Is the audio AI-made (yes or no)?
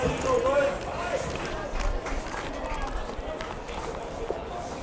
no